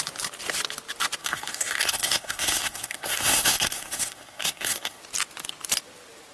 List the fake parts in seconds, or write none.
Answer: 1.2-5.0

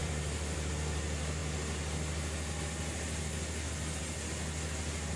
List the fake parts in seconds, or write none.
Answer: 0.0-0.7